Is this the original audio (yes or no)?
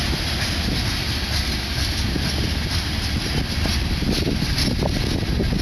yes